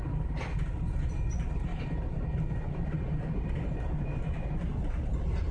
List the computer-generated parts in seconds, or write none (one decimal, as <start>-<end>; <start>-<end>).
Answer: none